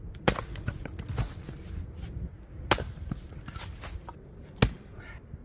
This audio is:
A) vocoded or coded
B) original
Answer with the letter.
B